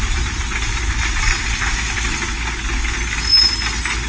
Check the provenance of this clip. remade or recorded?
recorded